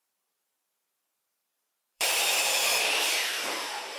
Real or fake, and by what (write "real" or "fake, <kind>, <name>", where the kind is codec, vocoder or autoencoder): fake, vocoder, BigVGAN v2